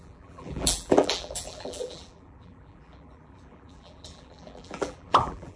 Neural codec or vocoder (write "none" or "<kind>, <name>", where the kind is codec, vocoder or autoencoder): vocoder, BigVGAN v2